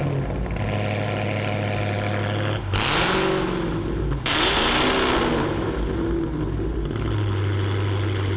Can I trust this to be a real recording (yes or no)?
yes